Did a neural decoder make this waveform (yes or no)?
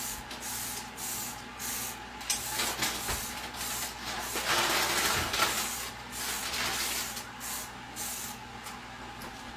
no